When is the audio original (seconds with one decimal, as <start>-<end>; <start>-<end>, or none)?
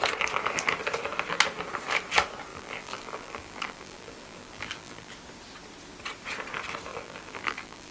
0.0-2.5; 5.1-6.9